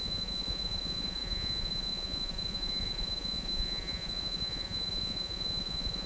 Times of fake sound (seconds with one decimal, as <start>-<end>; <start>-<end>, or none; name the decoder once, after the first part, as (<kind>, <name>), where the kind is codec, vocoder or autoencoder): 0.0-6.1 (vocoder, Vocos)